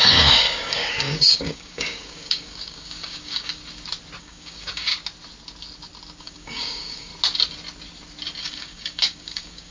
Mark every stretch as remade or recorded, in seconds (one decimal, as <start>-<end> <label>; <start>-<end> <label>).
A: 0.0-3.6 remade; 3.6-4.2 recorded; 4.2-4.9 remade; 4.9-6.2 recorded; 6.2-7.1 remade; 7.1-8.4 recorded; 8.4-9.7 remade